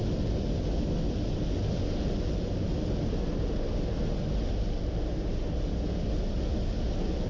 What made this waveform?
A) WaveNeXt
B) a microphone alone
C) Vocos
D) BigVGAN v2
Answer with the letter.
B